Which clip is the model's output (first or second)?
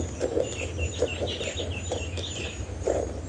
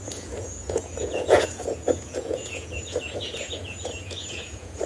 second